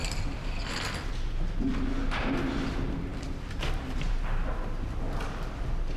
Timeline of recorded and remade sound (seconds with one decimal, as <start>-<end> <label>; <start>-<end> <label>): 0.0-6.0 recorded